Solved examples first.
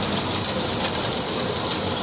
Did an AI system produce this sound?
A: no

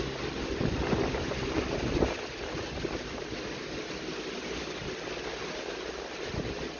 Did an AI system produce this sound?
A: no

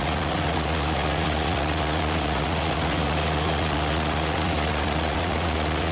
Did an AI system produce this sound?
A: yes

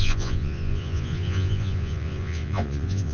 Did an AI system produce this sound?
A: yes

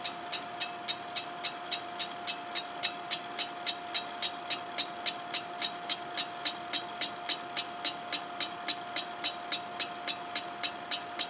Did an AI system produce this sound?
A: no